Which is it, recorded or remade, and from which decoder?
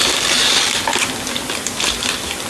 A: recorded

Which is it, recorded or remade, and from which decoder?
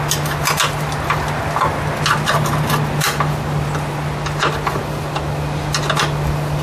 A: recorded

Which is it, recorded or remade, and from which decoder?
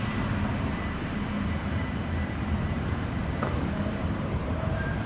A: remade, vocoder, BigVGAN v2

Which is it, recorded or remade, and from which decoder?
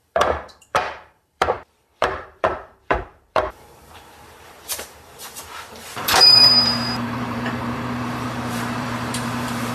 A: remade, vocoder, BigVGAN v2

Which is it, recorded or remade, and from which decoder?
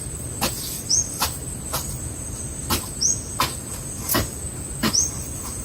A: recorded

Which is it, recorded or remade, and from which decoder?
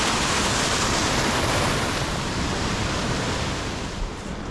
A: recorded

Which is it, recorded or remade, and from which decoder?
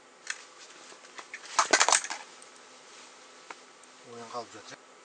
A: recorded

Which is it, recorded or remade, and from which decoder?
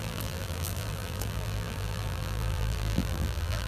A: remade, vocoder, BigVGAN v2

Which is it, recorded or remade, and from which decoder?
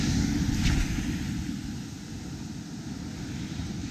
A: recorded